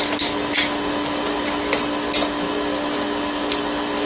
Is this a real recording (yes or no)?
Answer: yes